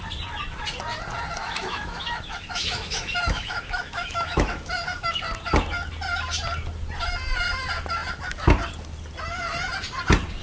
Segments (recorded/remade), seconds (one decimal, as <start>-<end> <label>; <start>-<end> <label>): 0.0-1.4 recorded; 1.4-5.2 remade; 5.2-10.4 recorded

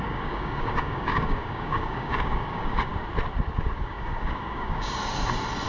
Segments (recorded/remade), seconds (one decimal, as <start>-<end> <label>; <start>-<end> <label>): 0.0-2.9 remade; 2.9-3.5 recorded; 3.5-5.0 remade; 5.0-5.7 recorded

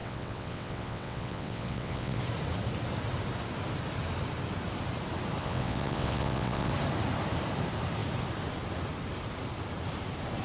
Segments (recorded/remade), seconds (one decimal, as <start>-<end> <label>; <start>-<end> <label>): 0.0-2.2 remade; 2.2-5.4 recorded; 5.4-6.7 remade; 6.7-10.4 recorded

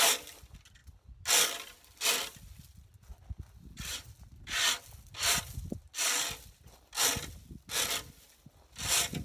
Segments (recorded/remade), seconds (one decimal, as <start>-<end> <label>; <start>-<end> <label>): 0.0-9.2 recorded

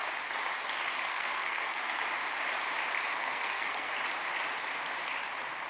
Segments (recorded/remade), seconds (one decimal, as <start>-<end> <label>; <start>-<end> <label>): 0.0-1.1 recorded; 1.1-2.0 remade; 2.0-3.1 recorded; 3.1-3.9 remade; 3.9-5.7 recorded

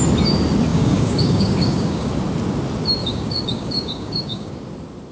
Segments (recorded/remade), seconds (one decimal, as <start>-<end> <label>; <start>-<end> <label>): 0.0-0.7 recorded; 0.7-2.1 remade; 2.1-3.0 recorded; 3.0-4.5 remade; 4.5-5.1 recorded

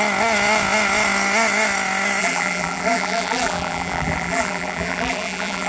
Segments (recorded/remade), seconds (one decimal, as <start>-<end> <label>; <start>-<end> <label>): 0.0-2.2 recorded; 2.2-5.7 remade